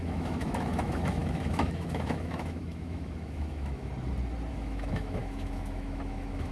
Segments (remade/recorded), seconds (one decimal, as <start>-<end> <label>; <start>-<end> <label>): 0.0-3.9 remade; 3.9-4.5 recorded; 4.5-6.5 remade